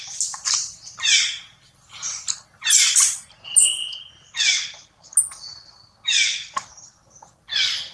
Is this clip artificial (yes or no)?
no